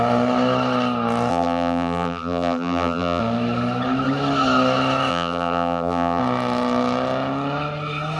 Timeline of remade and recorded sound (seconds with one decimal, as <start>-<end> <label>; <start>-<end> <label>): 0.0-1.3 recorded; 1.3-3.2 remade; 3.2-5.1 recorded; 5.1-6.2 remade; 6.2-8.2 recorded